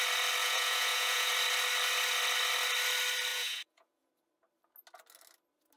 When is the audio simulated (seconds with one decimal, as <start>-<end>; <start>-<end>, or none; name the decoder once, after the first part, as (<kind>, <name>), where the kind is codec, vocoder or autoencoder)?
0.4-1.3 (vocoder, Vocos); 3.3-4.1